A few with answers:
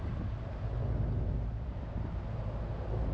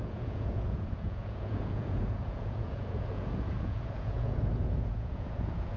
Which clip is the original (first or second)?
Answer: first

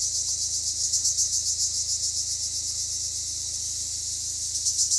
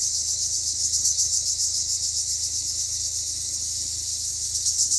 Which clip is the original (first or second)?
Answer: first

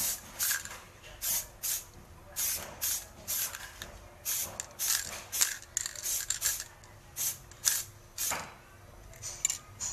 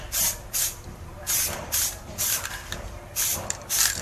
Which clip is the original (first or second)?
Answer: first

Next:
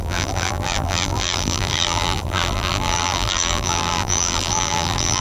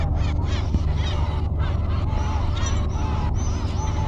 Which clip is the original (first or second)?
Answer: second